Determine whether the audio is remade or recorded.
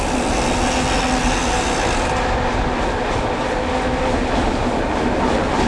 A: recorded